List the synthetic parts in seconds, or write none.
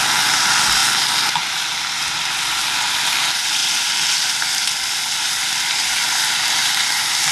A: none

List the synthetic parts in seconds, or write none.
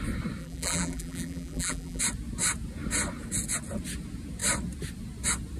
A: 0.4-2.0 (vocoder, BigVGAN v2)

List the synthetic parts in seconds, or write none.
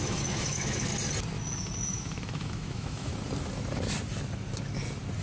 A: 0.0-0.9 (autoencoder, DAC-VAE); 1.8-3.1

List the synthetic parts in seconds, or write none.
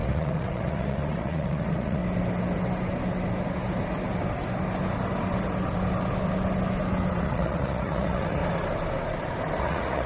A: 0.0-2.0 (vocoder, Vocos); 7.2-8.4; 9.6-10.1